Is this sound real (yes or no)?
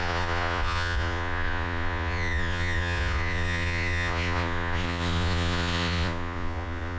no